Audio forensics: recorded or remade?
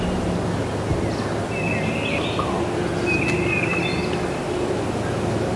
recorded